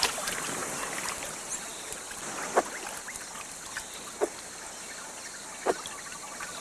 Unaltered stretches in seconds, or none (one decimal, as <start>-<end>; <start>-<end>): 0.0-0.6; 1.2-6.6